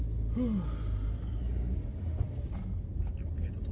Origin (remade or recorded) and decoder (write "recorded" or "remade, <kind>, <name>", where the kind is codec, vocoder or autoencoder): recorded